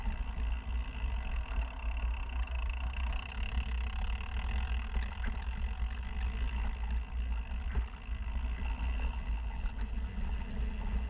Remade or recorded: recorded